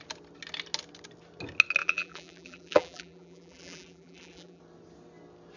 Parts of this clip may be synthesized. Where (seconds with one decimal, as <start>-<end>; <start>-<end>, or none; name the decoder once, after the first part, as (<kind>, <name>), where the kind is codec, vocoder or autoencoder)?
1.8-4.6 (vocoder, BigVGAN v2)

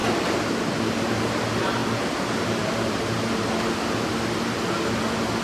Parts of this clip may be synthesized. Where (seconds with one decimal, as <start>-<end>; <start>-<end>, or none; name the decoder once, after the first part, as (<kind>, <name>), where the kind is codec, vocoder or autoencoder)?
0.0-1.4 (vocoder, BigVGAN v2); 1.8-5.0

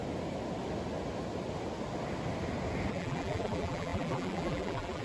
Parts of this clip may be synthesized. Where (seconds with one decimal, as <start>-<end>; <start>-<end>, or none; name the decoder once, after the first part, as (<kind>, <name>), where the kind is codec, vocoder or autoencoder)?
2.9-5.0 (vocoder, BigVGAN v2)

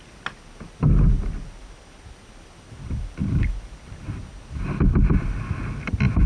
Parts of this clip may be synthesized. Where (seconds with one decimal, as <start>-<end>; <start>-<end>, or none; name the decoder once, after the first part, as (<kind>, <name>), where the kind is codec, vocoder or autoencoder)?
none